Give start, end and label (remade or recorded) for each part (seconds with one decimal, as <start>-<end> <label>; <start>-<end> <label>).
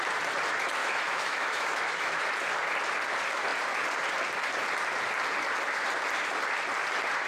0.0-0.8 recorded; 0.8-2.2 remade; 2.2-7.3 recorded